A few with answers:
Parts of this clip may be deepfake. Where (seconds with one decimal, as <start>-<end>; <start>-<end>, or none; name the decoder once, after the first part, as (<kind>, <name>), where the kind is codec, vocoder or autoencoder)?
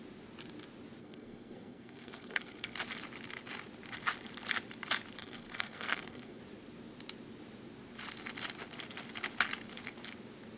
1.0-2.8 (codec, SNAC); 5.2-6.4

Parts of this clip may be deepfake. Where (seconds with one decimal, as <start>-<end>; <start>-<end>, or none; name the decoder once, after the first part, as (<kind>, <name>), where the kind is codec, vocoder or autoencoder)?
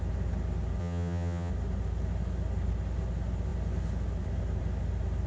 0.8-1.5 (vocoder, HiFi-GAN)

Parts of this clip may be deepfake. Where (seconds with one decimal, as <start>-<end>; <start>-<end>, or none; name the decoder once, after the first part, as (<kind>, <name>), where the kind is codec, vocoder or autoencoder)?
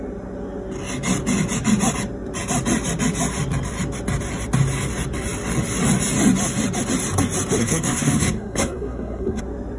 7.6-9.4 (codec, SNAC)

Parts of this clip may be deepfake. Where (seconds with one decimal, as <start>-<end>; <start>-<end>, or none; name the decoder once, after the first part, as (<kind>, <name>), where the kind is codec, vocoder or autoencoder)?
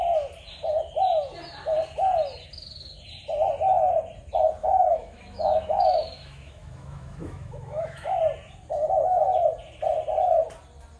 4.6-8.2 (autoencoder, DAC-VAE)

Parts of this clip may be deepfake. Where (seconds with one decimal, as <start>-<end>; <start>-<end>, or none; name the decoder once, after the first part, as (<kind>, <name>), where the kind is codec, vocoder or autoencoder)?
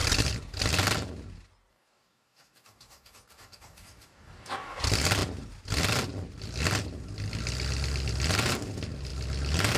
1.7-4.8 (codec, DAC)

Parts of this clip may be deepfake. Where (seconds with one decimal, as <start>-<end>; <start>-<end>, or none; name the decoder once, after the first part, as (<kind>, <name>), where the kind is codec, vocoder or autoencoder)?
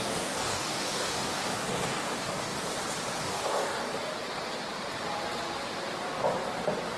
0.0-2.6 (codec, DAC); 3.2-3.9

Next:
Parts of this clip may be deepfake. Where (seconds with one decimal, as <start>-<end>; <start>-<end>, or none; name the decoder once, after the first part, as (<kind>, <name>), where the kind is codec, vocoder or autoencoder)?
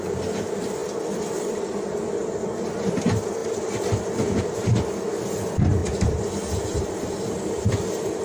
5.8-7.7 (vocoder, BigVGAN v2)